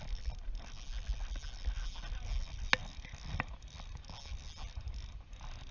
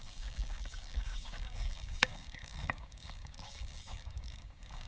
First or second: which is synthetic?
second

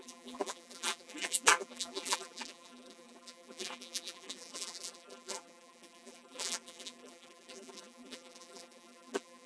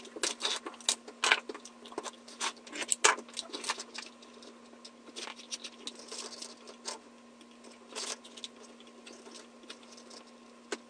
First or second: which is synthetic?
first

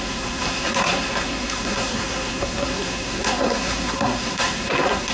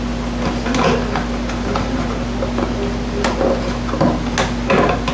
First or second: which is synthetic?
first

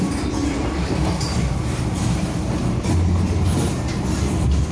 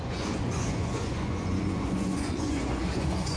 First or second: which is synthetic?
second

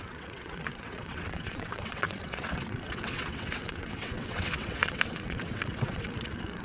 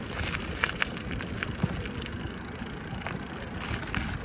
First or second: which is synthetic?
first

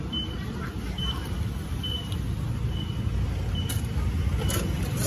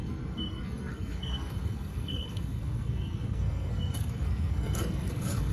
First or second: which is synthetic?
second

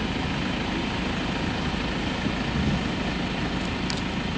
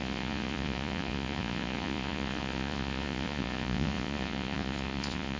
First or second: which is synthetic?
second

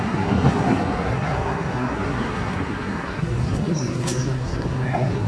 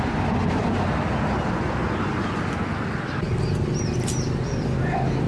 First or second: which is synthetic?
first